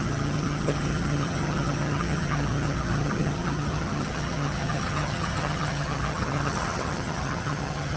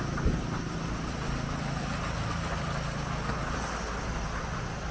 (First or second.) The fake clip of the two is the first